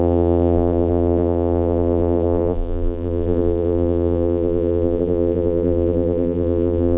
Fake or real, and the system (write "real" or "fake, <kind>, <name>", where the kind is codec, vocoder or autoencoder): fake, vocoder, BigVGAN v2